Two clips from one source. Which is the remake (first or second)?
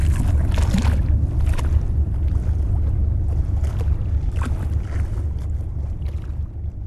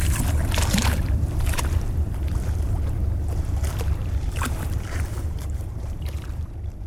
second